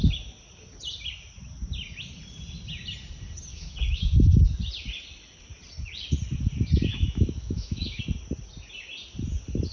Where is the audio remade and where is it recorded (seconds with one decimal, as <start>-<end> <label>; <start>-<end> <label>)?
0.0-3.5 recorded; 3.5-4.1 remade; 4.1-6.9 recorded; 6.9-8.0 remade; 8.0-9.7 recorded